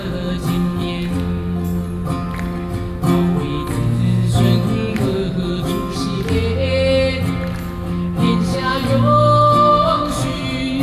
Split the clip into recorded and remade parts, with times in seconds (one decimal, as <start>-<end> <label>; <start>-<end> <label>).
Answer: 0.0-9.7 recorded; 9.7-10.4 remade; 10.4-10.8 recorded